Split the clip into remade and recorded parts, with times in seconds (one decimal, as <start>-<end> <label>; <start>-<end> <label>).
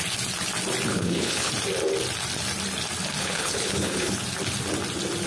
0.0-0.9 recorded; 0.9-1.5 remade; 1.5-3.2 recorded; 3.2-4.1 remade; 4.1-5.3 recorded